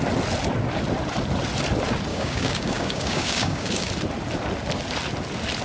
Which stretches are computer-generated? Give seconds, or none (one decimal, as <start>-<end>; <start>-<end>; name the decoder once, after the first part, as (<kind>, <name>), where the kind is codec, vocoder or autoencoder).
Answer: 2.1-3.9 (codec, DAC)